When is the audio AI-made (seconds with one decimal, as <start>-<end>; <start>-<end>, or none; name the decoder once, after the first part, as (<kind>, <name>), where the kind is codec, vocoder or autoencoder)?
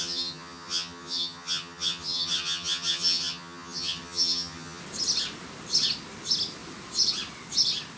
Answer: 0.0-4.8 (vocoder, HiFi-GAN)